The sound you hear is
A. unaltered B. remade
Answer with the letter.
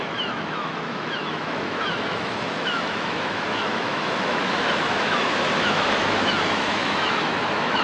B